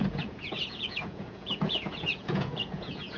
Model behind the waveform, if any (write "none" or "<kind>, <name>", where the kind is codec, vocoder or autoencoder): vocoder, Vocos